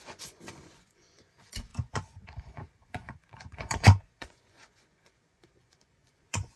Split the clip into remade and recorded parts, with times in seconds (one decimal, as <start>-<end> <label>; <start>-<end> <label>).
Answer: 0.0-6.6 remade

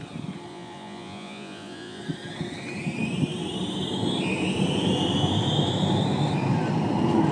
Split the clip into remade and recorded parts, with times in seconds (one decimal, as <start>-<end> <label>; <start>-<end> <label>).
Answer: 0.0-0.5 recorded; 0.5-2.0 remade; 2.0-7.3 recorded

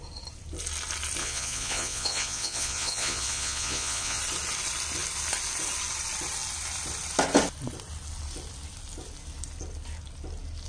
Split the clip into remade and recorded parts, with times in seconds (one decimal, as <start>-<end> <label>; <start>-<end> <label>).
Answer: 0.0-1.2 recorded; 1.2-4.2 remade; 4.2-10.7 recorded

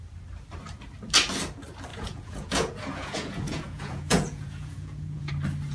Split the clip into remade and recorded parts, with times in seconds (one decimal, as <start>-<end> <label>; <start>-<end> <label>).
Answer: 0.0-1.9 recorded; 1.9-5.3 remade; 5.3-5.7 recorded

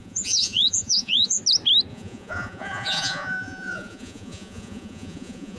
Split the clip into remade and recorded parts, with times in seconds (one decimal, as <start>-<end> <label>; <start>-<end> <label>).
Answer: 0.0-1.4 remade; 1.4-1.9 recorded; 1.9-5.6 remade

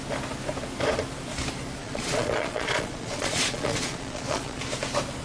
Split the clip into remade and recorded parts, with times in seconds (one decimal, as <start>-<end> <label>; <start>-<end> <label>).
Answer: 0.0-1.8 recorded; 1.8-4.6 remade; 4.6-5.2 recorded

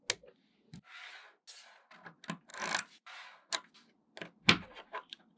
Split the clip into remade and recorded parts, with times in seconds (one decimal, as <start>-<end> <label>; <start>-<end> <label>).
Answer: 0.0-5.4 recorded